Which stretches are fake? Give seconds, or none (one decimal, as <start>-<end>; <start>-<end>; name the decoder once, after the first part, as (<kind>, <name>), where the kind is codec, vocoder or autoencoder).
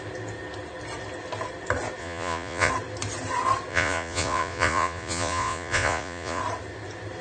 2.0-2.7 (vocoder, Vocos); 3.7-6.4